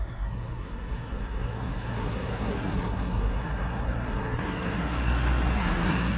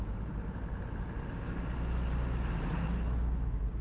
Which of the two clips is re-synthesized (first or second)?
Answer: first